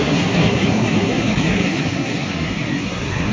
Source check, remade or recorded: remade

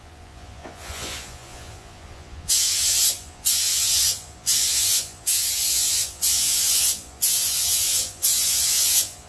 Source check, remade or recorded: remade